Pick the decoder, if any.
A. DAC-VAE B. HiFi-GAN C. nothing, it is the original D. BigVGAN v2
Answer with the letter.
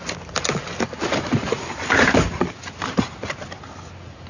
C